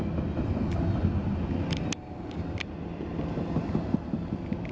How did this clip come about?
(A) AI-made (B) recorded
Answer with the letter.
B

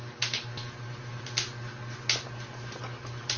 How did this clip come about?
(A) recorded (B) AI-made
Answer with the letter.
A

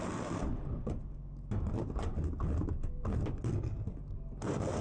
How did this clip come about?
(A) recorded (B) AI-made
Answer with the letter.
A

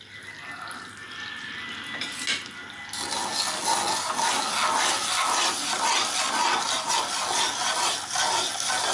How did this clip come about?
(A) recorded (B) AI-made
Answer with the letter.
A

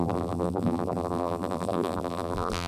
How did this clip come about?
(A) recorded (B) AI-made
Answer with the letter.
B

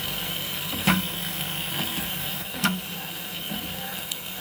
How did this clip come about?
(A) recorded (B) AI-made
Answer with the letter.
B